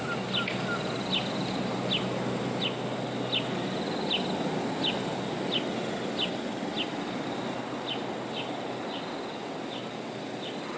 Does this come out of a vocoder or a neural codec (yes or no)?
no